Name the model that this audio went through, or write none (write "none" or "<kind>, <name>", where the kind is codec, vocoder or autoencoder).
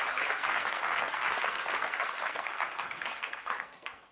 codec, SNAC